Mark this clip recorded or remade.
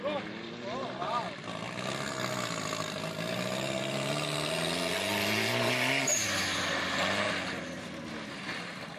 recorded